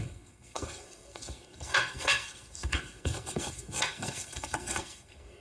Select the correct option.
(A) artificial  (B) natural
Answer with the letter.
A